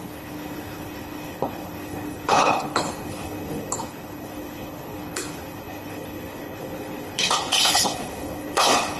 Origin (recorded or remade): remade